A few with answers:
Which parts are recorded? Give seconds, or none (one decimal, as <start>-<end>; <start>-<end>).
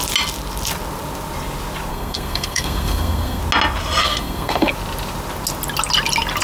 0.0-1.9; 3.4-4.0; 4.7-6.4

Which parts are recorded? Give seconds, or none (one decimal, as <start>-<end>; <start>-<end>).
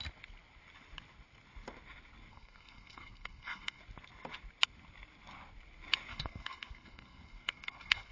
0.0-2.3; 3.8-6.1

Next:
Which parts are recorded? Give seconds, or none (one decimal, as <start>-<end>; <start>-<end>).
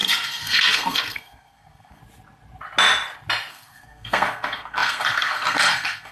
2.0-3.5